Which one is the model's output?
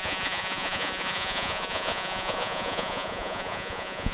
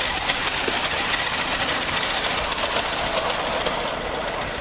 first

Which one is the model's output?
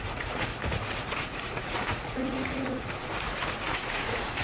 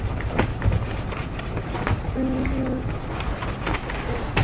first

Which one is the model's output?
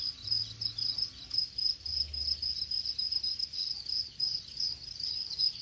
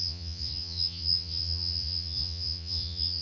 second